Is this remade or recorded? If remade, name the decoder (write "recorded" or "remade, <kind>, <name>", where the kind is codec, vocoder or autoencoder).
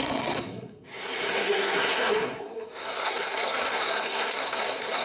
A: remade, codec, SNAC